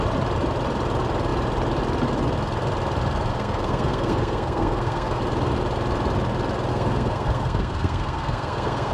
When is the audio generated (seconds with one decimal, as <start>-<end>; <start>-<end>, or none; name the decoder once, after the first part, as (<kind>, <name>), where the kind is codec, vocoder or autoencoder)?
3.3-5.2 (codec, SNAC); 6.7-8.9

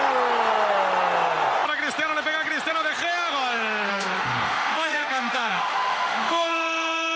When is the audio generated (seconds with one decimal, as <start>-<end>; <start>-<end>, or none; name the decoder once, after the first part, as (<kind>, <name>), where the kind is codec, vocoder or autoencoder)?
3.9-7.2 (autoencoder, DAC-VAE)

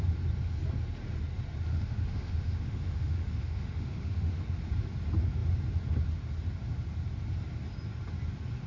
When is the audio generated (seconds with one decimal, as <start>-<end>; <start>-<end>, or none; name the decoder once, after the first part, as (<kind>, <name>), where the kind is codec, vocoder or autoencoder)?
1.7-4.3 (autoencoder, DAC-VAE)

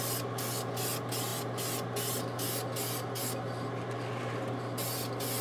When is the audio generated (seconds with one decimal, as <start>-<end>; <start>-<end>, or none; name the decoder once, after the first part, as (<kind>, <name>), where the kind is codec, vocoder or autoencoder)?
none

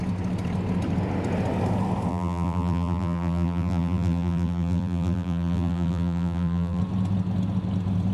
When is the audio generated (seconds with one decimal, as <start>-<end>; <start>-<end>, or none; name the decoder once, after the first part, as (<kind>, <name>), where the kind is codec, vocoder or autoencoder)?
2.1-6.8 (vocoder, BigVGAN v2)